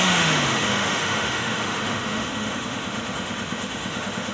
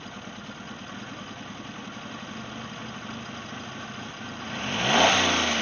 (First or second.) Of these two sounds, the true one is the second